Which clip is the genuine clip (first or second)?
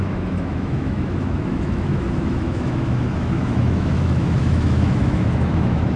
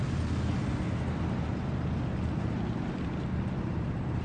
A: second